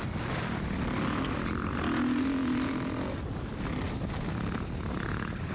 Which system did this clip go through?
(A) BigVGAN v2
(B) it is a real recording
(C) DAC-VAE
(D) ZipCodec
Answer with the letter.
B